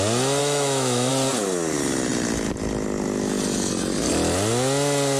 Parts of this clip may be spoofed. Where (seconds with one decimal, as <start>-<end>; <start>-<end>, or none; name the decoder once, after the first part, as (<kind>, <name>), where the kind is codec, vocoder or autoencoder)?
0.4-1.1 (autoencoder, DAC-VAE)